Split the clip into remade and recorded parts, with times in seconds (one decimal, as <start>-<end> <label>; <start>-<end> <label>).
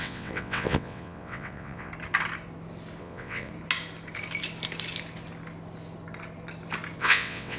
0.0-1.9 remade; 1.9-3.0 recorded; 3.0-3.5 remade; 3.5-7.0 recorded; 7.0-7.6 remade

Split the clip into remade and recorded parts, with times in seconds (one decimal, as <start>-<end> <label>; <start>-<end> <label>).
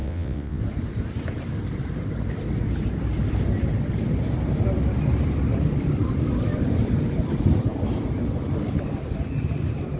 0.0-0.6 remade; 0.6-10.0 recorded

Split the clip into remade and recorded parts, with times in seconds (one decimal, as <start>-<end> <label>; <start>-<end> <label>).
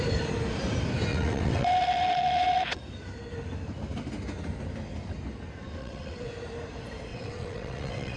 0.0-1.1 recorded; 1.1-2.8 remade; 2.8-5.8 recorded; 5.8-6.3 remade; 6.3-7.1 recorded; 7.1-8.2 remade